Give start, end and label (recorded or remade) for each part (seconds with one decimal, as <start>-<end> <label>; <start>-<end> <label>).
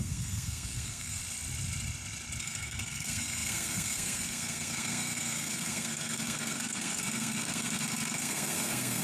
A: 0.0-1.2 remade; 1.2-2.4 recorded; 2.4-9.0 remade